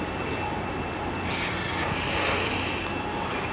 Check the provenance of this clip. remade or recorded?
recorded